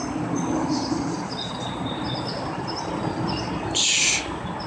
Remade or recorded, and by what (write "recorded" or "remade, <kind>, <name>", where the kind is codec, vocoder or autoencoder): recorded